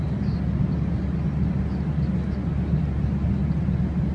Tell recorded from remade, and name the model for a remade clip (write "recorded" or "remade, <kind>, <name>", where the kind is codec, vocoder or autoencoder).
recorded